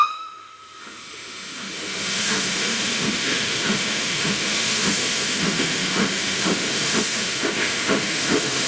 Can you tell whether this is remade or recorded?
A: remade